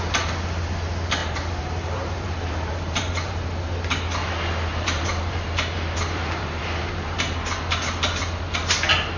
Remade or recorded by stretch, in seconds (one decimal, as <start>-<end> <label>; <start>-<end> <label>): 0.0-1.2 recorded; 1.2-3.4 remade; 3.4-4.7 recorded; 4.7-7.6 remade; 7.6-9.2 recorded